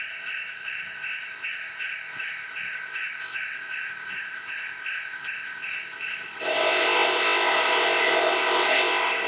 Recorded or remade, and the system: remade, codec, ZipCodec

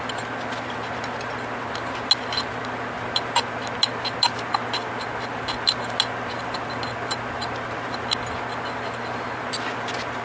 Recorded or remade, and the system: recorded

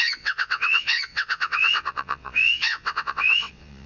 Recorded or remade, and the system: remade, vocoder, WaveNeXt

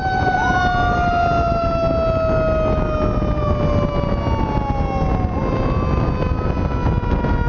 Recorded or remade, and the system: recorded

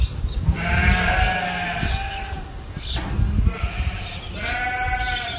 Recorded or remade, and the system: recorded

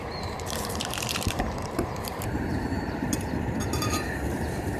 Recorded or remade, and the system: remade, vocoder, BigVGAN v2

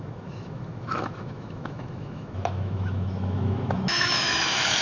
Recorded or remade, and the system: remade, autoencoder, DAC-VAE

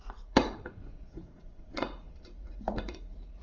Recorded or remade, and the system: remade, vocoder, Vocos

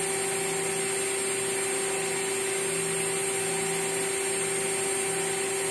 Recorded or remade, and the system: recorded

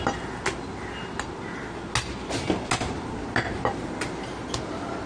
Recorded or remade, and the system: recorded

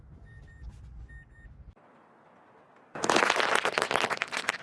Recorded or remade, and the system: recorded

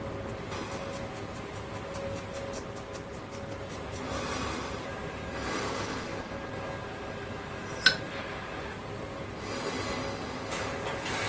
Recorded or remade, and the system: recorded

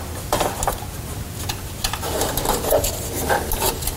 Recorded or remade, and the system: recorded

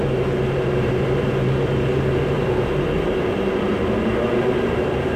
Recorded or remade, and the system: remade, vocoder, BigVGAN v2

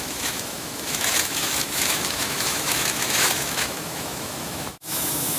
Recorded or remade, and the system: remade, autoencoder, DAC-VAE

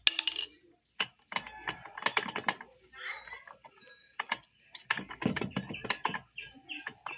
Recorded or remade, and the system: recorded